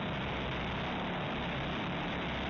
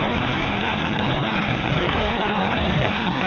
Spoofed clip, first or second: second